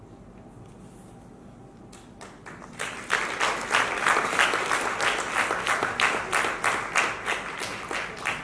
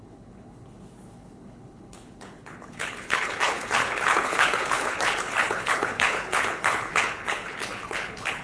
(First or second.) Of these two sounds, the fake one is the second